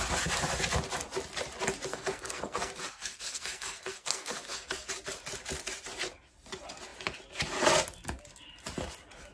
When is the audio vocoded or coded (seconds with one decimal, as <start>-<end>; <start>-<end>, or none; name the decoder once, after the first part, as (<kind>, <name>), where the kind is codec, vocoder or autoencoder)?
1.9-4.9 (codec, SNAC)